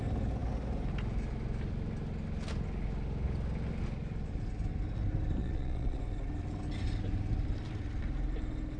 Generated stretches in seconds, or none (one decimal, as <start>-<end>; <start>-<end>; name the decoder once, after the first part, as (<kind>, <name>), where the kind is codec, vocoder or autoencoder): 5.4-6.0 (vocoder, Vocos)